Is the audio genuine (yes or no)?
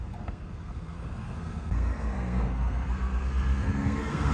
no